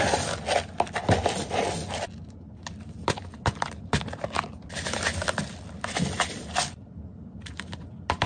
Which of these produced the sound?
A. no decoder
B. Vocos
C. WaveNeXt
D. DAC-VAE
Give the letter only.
A